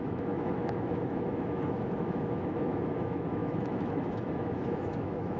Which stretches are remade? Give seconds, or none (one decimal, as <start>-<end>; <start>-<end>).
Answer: 0.0-5.4